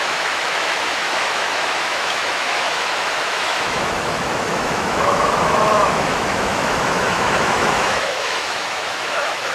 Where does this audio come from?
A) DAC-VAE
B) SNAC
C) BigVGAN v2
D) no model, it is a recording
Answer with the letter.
A